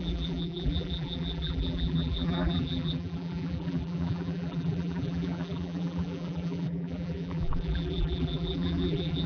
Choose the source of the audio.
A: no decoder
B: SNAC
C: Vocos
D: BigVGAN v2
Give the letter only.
D